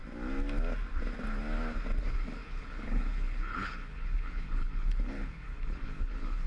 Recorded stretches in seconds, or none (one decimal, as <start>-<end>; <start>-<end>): 0.0-2.0